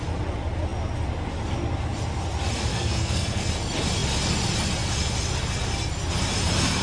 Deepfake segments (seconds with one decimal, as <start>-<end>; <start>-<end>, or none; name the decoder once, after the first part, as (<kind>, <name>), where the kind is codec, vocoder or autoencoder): 2.7-3.5 (codec, SNAC)